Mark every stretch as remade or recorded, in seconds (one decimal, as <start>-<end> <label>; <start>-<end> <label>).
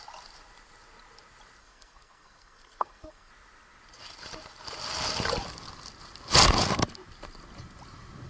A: 0.0-1.6 recorded; 1.6-3.3 remade; 3.3-8.3 recorded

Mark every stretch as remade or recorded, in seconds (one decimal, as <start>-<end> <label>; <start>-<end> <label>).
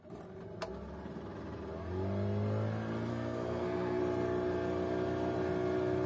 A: 0.0-3.1 recorded; 3.1-4.0 remade; 4.0-6.1 recorded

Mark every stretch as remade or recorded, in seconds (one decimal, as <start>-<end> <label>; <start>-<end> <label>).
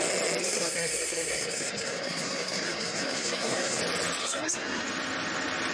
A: 0.0-0.4 recorded; 0.4-3.8 remade; 3.8-4.2 recorded; 4.2-4.8 remade; 4.8-5.7 recorded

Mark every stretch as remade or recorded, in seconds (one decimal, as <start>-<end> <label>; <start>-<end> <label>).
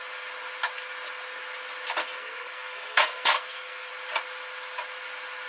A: 0.0-2.0 recorded; 2.0-3.9 remade; 3.9-5.5 recorded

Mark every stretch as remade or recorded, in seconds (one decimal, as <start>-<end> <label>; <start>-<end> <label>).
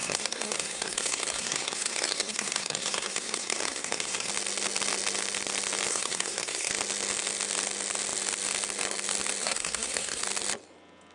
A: 0.0-4.3 remade; 4.3-5.9 recorded; 5.9-6.7 remade; 6.7-9.4 recorded; 9.4-10.2 remade; 10.2-11.1 recorded